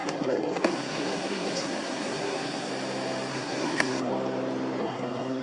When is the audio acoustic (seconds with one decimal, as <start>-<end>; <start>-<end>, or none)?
2.7-3.3; 4.1-4.8